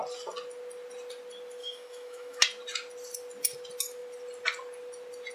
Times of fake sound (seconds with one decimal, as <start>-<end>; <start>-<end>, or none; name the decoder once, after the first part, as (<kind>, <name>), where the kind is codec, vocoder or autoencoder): 1.6-2.4 (autoencoder, DAC-VAE)